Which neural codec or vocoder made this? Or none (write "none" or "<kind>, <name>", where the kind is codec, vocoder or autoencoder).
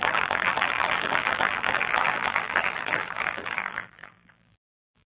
vocoder, BigVGAN v2